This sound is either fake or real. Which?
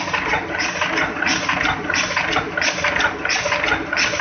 real